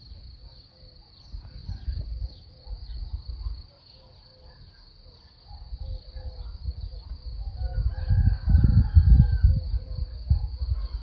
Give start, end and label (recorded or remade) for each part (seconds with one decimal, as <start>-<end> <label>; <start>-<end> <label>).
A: 0.0-1.6 recorded; 1.6-3.4 remade; 3.4-11.0 recorded